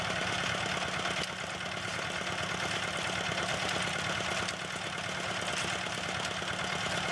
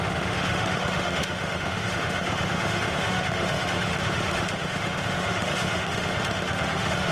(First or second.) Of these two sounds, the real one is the first